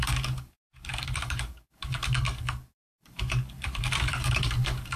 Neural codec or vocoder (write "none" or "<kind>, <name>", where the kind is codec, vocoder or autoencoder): codec, DAC